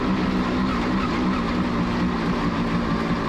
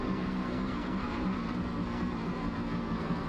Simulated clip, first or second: second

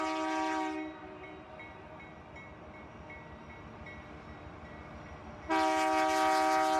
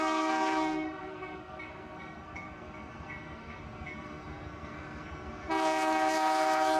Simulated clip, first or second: second